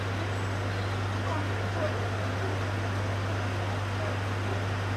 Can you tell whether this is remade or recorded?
recorded